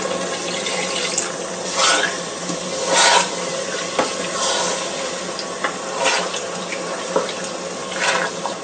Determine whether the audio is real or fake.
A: real